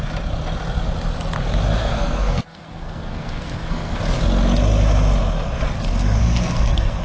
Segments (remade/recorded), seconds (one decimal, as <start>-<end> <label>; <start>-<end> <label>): 0.0-1.8 recorded; 1.8-4.0 remade; 4.0-6.2 recorded; 6.2-7.0 remade